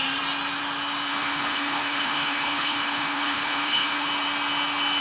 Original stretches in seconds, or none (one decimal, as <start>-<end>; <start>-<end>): 0.0-1.1; 4.1-5.0